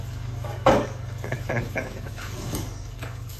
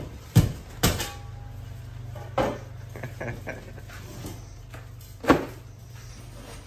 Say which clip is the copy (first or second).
first